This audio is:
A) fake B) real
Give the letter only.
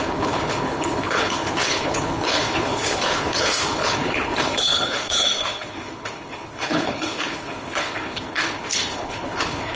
A